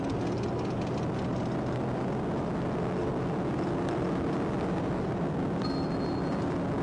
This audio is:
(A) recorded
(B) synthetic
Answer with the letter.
A